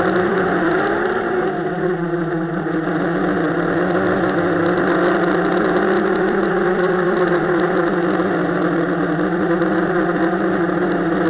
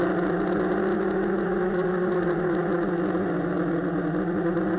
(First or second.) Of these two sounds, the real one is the second